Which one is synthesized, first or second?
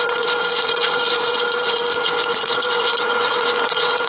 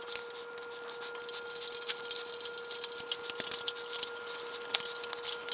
first